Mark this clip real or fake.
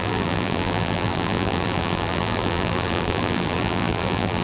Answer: fake